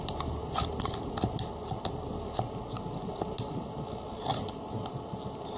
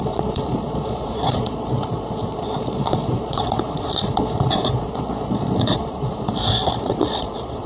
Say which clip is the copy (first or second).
second